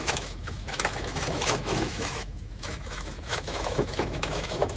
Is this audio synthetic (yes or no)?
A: yes